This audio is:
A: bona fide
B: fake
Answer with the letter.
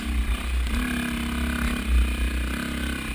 A